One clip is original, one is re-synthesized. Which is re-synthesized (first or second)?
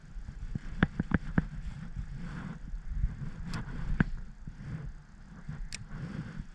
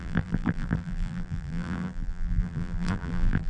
second